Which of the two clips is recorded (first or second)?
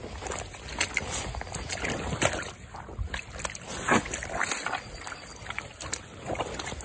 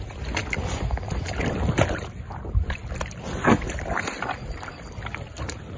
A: first